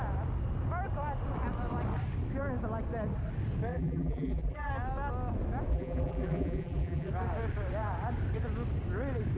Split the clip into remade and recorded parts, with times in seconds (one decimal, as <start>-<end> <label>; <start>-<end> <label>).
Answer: 0.0-3.7 recorded; 3.7-4.7 remade; 4.7-5.7 recorded; 5.7-7.1 remade; 7.1-9.4 recorded